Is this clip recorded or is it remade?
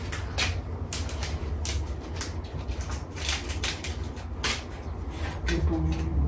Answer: recorded